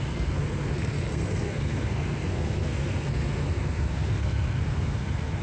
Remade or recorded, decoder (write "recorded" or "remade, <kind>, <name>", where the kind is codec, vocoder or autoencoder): remade, codec, SNAC